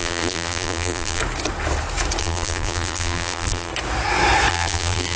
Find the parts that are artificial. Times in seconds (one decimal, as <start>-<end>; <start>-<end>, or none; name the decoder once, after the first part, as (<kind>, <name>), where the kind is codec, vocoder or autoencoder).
0.0-1.2 (vocoder, BigVGAN v2); 2.2-3.7; 4.5-5.2